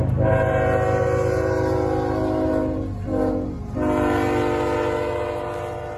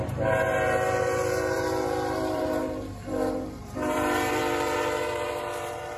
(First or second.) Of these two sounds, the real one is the first